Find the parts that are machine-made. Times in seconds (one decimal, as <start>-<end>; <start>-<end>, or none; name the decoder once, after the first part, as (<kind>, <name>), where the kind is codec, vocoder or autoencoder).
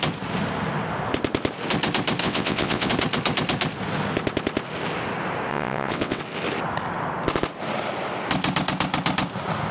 2.2-2.9 (vocoder, WaveNeXt); 5.5-6.2